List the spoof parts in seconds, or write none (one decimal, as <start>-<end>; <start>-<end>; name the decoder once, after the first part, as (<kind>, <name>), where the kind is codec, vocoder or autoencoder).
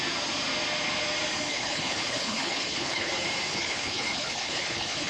1.5-3.1 (codec, HILCodec); 3.5-5.1